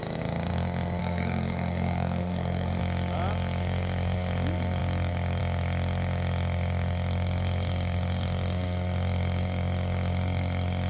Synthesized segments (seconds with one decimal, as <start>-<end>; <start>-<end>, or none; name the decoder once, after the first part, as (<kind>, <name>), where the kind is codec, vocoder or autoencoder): 1.0-2.8 (codec, SNAC)